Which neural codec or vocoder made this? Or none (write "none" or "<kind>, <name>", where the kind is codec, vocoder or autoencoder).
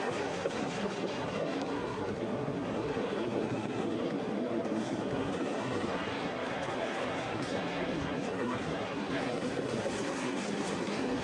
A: codec, SNAC